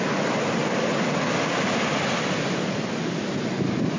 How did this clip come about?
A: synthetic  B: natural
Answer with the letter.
B